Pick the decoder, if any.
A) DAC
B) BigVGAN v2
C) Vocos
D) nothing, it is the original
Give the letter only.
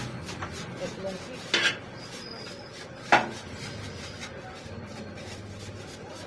D